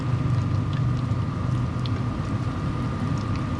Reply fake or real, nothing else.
real